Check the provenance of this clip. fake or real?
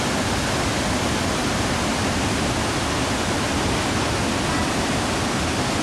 real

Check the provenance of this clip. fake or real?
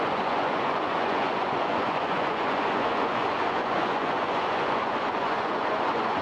fake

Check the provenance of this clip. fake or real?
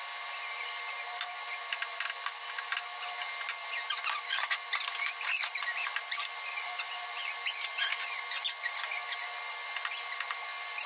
real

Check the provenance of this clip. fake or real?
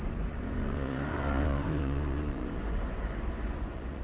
fake